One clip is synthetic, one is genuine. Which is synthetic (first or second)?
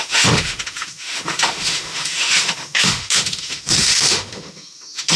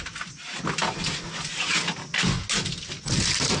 first